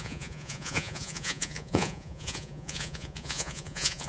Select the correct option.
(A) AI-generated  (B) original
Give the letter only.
A